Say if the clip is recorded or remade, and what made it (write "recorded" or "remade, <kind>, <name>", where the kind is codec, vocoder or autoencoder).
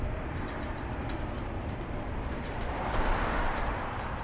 remade, vocoder, BigVGAN v2